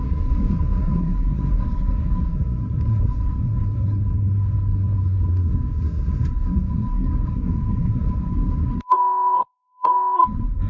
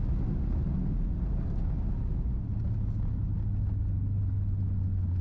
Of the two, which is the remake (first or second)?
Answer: first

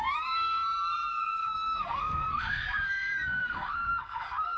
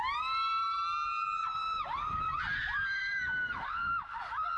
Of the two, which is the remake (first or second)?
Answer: first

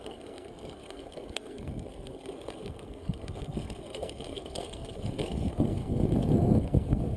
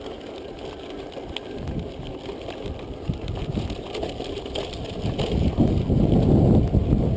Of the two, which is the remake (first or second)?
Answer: first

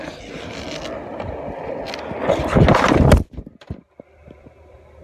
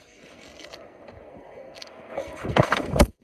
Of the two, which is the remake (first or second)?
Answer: second